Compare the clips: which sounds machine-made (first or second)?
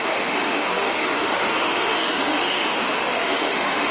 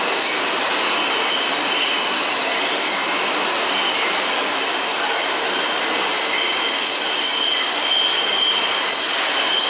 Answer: first